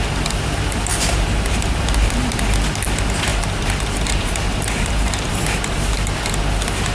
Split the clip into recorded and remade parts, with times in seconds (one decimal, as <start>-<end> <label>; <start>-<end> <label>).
0.0-0.9 recorded; 0.9-2.3 remade; 2.3-3.3 recorded; 3.3-5.4 remade; 5.4-6.9 recorded